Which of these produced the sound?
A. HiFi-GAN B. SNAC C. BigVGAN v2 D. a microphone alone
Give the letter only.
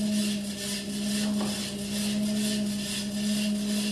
D